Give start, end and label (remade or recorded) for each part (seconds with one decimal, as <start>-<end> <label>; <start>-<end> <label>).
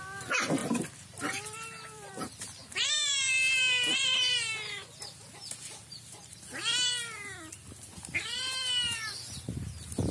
0.0-0.6 recorded; 0.6-2.9 remade; 2.9-10.1 recorded